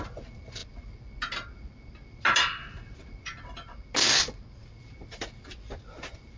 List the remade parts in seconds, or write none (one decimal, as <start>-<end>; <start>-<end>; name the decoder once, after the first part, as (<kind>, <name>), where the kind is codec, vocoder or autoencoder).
none